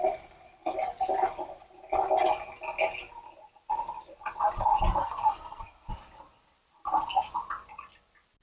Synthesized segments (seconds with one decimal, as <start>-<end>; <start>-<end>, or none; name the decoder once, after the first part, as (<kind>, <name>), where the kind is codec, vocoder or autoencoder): 5.0-5.9 (codec, SNAC)